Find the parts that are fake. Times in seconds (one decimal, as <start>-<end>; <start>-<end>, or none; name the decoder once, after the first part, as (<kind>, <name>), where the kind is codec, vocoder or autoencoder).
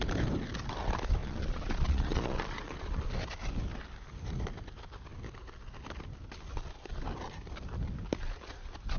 1.2-3.1 (vocoder, Vocos)